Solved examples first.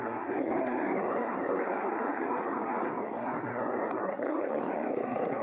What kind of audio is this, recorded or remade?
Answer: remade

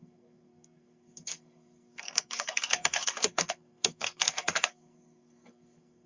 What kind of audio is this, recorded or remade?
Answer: remade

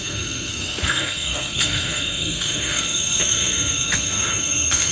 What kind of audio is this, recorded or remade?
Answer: remade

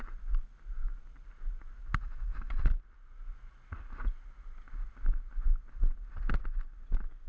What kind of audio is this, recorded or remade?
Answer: recorded